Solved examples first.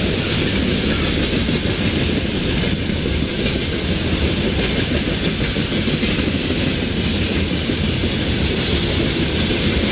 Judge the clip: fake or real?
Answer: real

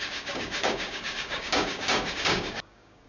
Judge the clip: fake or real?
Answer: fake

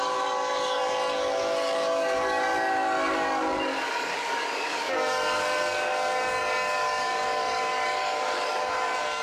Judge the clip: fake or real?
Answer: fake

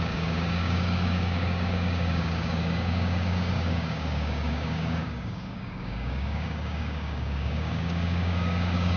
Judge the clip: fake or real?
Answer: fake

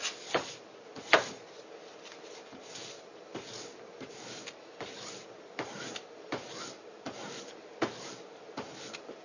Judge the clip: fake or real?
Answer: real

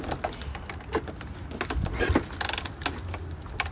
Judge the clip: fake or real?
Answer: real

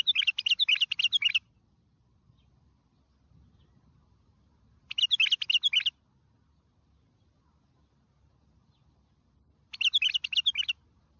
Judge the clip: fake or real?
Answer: real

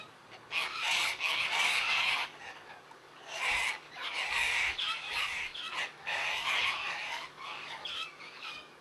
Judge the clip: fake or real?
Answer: fake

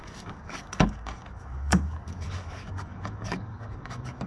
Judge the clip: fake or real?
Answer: fake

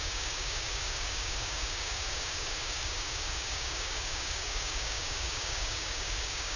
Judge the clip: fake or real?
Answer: fake